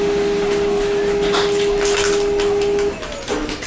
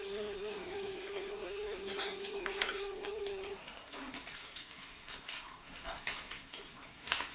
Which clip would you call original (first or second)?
first